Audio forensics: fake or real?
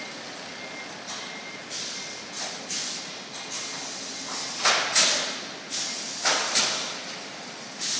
real